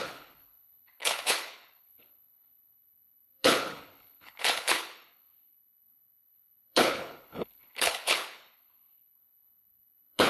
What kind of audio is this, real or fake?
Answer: fake